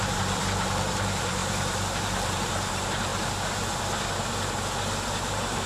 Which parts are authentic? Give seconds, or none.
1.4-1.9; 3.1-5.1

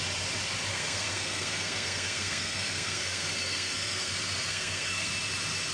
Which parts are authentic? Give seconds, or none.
0.0-0.7; 4.1-4.5; 5.1-5.7

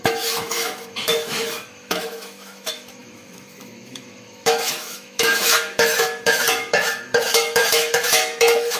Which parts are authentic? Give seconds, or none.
none

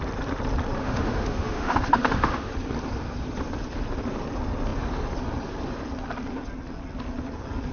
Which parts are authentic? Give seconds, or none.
0.0-0.8; 2.5-7.7

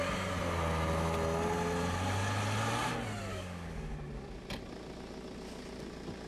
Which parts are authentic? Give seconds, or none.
0.0-3.3; 3.9-6.3

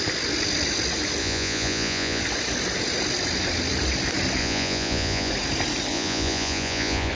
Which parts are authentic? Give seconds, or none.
0.0-1.2; 2.2-4.4; 5.3-5.9

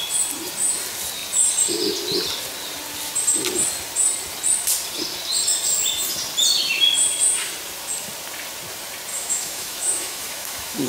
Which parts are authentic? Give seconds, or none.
0.0-9.1